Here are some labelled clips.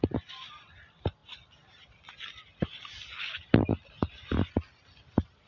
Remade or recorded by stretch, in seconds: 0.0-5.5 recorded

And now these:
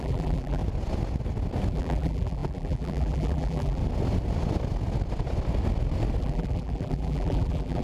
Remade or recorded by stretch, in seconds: 0.0-0.6 remade; 0.6-1.7 recorded; 1.7-3.8 remade; 3.8-6.2 recorded; 6.2-7.8 remade

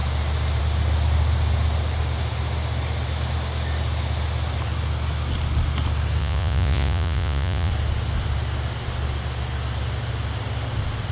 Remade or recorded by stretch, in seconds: 0.0-6.2 recorded; 6.2-7.7 remade; 7.7-11.1 recorded